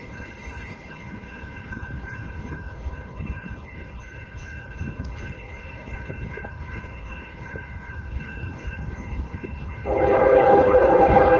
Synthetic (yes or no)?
yes